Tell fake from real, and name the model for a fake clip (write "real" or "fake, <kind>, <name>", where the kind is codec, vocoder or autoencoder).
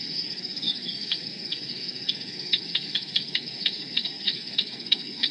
fake, codec, SNAC